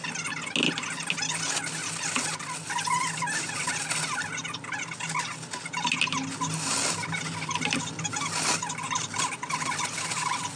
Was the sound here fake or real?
real